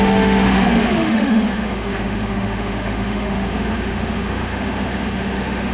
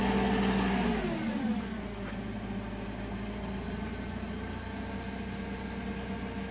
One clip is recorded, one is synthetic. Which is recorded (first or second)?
second